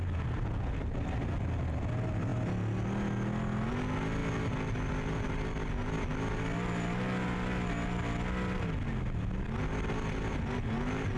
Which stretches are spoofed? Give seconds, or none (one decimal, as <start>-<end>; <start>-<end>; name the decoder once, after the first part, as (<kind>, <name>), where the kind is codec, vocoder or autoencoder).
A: none